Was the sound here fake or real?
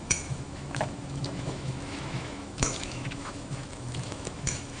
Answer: fake